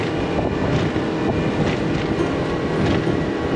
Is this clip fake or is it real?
real